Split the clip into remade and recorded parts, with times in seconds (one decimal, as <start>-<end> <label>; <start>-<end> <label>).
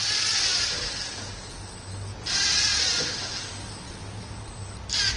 0.0-5.2 recorded